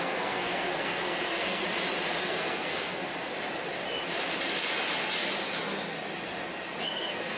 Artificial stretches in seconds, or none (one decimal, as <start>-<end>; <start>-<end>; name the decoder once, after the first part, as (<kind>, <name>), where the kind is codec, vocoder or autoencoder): 0.0-1.6 (codec, SNAC); 2.2-3.1; 6.8-7.4